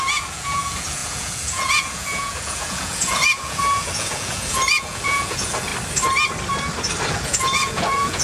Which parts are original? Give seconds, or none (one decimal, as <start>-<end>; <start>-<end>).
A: 5.7-7.1